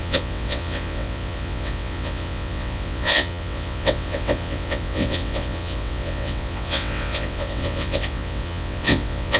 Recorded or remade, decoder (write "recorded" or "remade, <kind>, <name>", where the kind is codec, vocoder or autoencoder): remade, vocoder, WaveNeXt